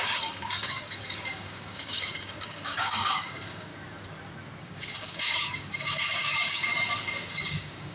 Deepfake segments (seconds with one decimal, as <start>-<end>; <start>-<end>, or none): 0.0-3.7; 4.6-6.7; 7.3-7.9